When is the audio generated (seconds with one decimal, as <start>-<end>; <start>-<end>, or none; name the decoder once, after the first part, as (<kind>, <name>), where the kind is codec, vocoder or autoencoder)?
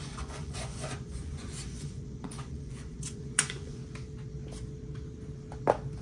0.0-3.8 (vocoder, Vocos)